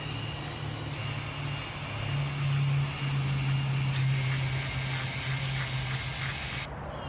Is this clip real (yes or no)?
yes